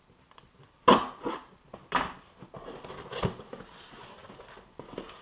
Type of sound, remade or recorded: recorded